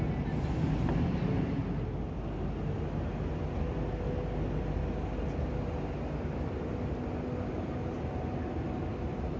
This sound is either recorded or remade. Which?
recorded